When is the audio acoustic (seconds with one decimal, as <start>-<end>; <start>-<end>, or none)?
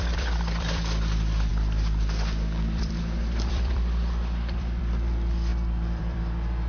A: none